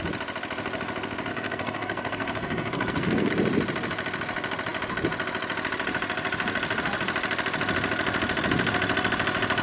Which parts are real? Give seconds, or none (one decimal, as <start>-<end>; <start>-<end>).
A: 0.0-1.3; 3.3-9.6